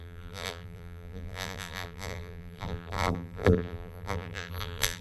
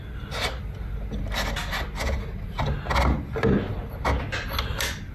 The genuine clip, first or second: second